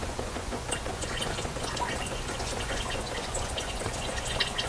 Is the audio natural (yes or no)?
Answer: no